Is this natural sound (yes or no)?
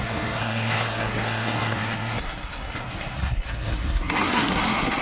no